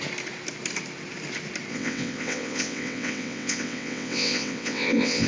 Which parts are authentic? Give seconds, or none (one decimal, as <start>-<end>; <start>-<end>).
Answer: 0.0-1.7